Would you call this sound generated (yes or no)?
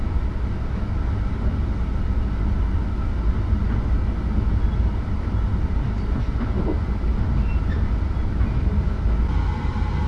no